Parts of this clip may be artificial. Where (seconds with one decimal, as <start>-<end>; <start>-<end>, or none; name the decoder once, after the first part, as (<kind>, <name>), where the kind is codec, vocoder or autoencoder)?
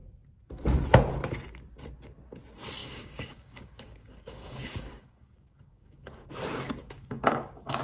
2.8-6.3 (codec, DAC); 6.8-7.8